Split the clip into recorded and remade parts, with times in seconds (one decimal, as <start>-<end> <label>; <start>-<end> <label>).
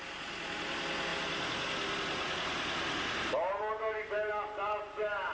0.0-5.3 recorded